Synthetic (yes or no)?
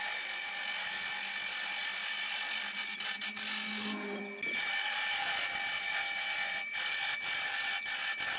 no